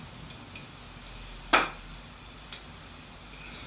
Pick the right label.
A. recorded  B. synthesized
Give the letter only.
A